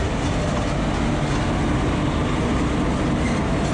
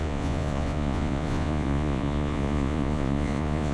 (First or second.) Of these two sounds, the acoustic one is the first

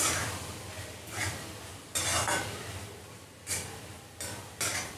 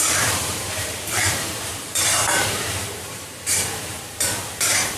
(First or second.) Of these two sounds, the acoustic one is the first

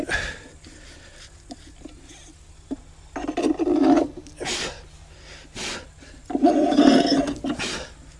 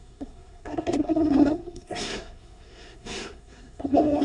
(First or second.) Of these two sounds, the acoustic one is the first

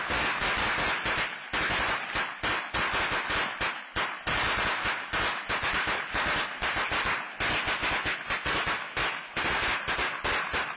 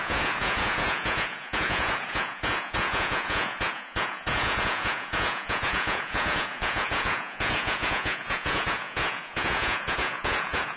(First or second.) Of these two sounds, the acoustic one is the first